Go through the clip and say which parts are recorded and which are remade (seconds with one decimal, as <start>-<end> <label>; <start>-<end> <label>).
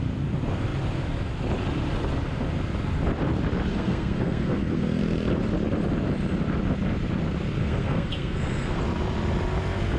0.0-3.7 recorded; 3.7-5.0 remade; 5.0-7.6 recorded; 7.6-8.8 remade; 8.8-10.0 recorded